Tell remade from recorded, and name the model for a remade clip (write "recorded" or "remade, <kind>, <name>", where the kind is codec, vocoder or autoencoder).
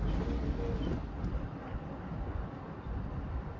recorded